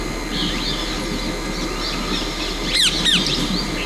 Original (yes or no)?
yes